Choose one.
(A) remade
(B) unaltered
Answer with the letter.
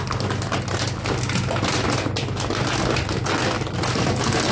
B